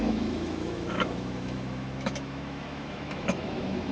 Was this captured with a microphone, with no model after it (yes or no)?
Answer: no